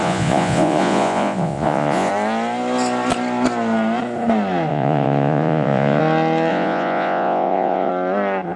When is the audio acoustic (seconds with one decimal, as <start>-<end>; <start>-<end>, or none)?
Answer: 2.1-4.7; 6.0-6.5; 7.9-8.6